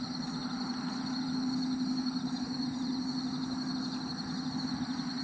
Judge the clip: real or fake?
real